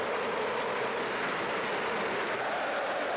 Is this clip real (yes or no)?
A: yes